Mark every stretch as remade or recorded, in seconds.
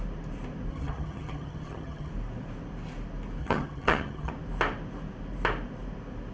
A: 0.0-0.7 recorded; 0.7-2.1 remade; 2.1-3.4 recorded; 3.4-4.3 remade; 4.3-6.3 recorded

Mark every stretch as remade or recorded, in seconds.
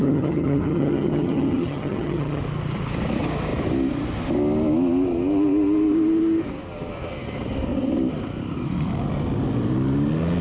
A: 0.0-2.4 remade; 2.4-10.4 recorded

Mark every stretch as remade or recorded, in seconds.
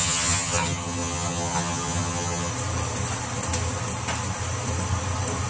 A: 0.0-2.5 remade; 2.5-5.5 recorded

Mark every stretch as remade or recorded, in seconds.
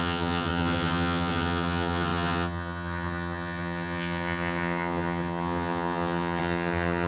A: 0.0-7.1 remade